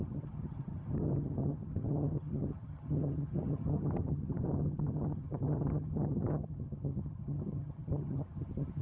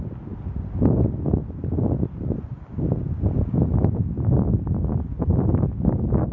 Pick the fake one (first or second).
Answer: first